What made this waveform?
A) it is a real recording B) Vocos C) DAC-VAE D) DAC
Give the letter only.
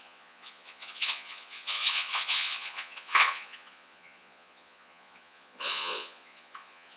B